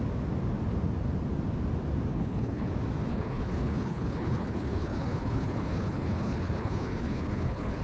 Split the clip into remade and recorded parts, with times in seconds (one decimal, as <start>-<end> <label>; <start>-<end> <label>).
0.0-2.1 recorded; 2.1-2.7 remade; 2.7-3.1 recorded; 3.1-7.8 remade